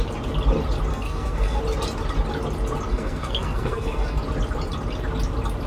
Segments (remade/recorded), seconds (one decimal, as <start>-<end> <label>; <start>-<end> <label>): 0.0-0.9 recorded; 0.9-1.6 remade; 1.6-2.9 recorded; 2.9-4.2 remade; 4.2-5.7 recorded